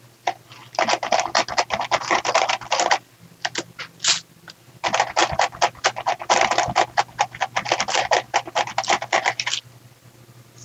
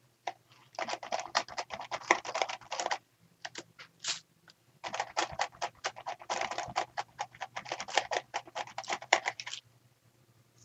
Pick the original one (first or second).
first